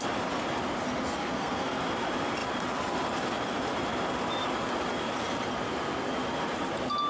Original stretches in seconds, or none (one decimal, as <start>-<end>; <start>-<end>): 0.0-1.2; 1.8-7.1